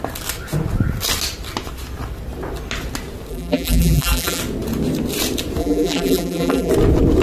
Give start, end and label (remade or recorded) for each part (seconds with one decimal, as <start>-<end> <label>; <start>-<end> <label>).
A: 0.0-3.3 recorded; 3.3-4.4 remade; 4.4-5.6 recorded; 5.6-6.7 remade; 6.7-7.2 recorded